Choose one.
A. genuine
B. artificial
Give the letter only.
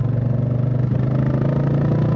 A